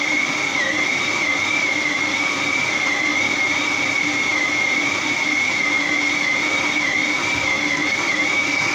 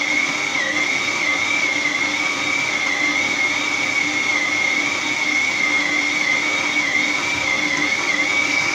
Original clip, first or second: second